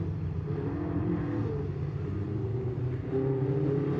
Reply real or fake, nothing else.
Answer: real